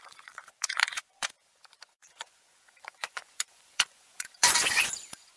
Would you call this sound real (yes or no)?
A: no